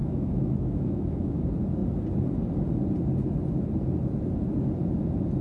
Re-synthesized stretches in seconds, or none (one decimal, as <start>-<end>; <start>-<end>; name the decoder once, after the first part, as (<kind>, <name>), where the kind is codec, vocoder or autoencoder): 0.0-1.4 (autoencoder, DAC-VAE)